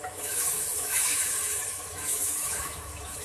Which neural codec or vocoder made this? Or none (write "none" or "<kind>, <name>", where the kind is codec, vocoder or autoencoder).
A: autoencoder, DAC-VAE